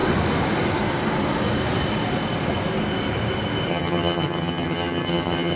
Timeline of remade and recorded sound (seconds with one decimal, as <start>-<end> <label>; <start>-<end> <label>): 0.0-3.7 recorded; 3.7-5.6 remade